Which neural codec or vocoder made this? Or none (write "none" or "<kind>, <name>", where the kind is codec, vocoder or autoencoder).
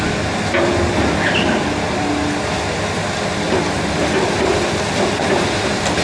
none